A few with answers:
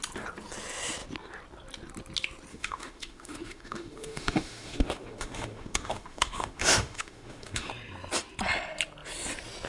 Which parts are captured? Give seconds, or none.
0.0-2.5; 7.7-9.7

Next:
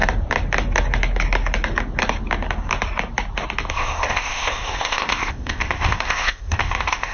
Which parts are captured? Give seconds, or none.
0.0-3.7

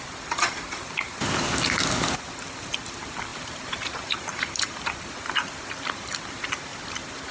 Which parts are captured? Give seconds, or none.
0.0-3.3; 4.9-7.3

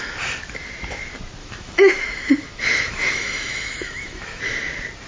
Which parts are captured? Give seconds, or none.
0.0-1.4; 4.5-5.1

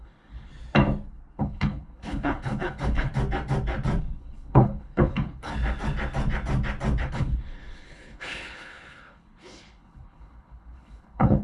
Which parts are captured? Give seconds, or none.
0.5-1.4; 3.1-4.0; 5.5-7.0